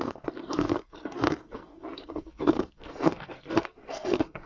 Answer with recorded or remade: remade